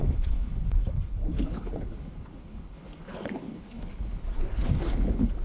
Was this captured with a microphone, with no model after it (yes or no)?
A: no